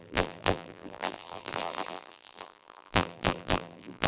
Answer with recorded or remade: remade